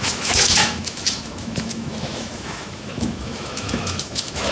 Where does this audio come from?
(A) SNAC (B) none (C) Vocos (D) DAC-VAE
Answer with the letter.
D